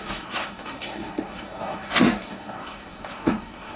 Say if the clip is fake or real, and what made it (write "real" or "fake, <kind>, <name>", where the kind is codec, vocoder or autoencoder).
fake, codec, SNAC